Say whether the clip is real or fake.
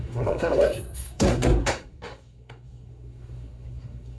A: fake